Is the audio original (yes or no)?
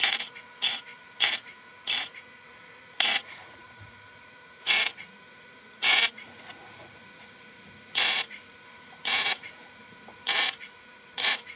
no